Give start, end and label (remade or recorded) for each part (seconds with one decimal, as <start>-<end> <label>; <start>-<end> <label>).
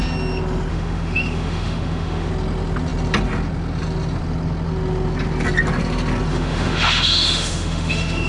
0.0-0.7 recorded; 0.7-2.3 remade; 2.3-6.3 recorded; 6.3-8.3 remade